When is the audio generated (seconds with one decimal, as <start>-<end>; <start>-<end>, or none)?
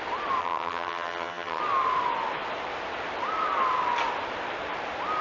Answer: 0.4-1.6